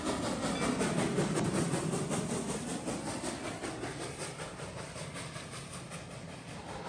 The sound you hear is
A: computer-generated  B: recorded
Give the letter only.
B